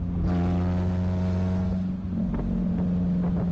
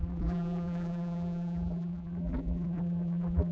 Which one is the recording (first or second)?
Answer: first